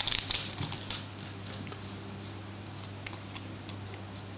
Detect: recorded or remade recorded